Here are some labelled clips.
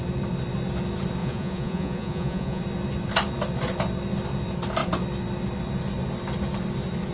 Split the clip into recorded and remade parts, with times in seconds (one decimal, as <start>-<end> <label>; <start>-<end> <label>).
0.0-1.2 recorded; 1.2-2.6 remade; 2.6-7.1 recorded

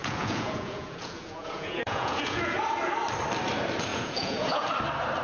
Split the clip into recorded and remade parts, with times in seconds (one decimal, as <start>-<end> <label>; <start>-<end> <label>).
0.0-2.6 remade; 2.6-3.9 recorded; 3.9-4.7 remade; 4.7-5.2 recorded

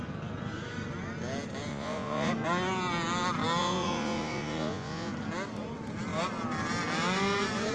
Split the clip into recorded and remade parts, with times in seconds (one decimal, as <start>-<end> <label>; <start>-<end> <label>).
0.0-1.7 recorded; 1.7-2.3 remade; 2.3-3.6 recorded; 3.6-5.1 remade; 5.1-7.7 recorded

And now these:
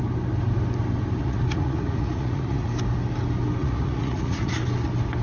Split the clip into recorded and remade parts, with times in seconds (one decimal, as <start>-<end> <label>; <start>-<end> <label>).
0.0-1.2 recorded; 1.2-2.7 remade; 2.7-3.6 recorded; 3.6-4.5 remade; 4.5-5.2 recorded

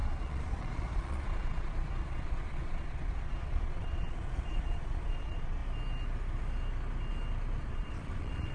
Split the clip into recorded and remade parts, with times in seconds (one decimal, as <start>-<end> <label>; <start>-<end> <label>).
0.0-5.6 remade; 5.6-7.6 recorded; 7.6-8.5 remade